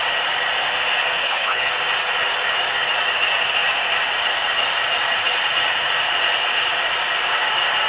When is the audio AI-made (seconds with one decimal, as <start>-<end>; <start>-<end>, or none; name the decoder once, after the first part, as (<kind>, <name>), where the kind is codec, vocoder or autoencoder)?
1.2-1.7 (codec, HILCodec)